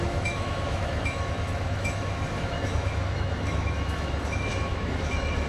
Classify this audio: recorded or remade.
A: remade